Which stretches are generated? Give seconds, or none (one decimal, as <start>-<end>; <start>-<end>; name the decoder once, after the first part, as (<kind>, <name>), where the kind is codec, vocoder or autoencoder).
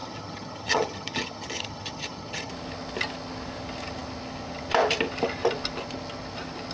0.0-2.5 (vocoder, HiFi-GAN)